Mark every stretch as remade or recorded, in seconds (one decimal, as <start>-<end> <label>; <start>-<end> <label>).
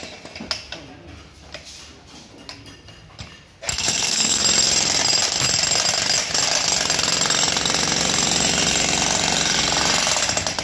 0.0-3.7 recorded; 3.7-4.4 remade; 4.4-10.6 recorded